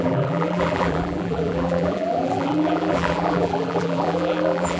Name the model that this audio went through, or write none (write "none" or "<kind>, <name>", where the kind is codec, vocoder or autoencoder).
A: vocoder, BigVGAN v2